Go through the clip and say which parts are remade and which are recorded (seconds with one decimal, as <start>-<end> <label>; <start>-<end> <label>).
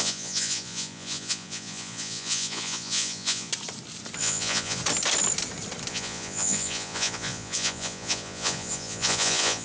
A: 0.0-3.5 remade; 3.5-4.2 recorded; 4.2-4.8 remade; 4.8-5.9 recorded; 5.9-9.6 remade